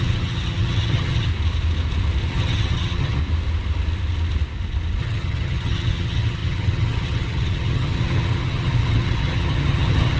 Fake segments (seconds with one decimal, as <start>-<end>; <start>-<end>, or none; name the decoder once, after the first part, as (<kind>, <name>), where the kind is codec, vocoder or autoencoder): 0.0-1.3 (vocoder, HiFi-GAN); 2.3-3.2; 5.0-10.2